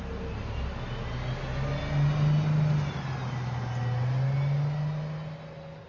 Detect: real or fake real